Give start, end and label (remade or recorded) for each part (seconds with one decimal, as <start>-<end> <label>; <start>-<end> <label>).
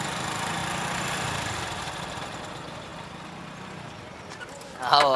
0.0-0.6 remade; 0.6-2.0 recorded; 2.0-2.9 remade; 2.9-3.4 recorded; 3.4-5.2 remade